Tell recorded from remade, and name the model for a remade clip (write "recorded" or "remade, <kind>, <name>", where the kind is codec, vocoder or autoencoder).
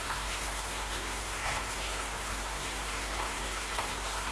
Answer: remade, codec, SNAC